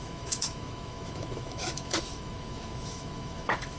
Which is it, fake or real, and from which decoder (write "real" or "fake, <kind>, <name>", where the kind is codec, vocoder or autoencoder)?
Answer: fake, autoencoder, DAC-VAE